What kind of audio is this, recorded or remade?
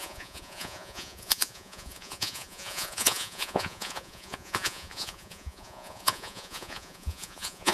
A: remade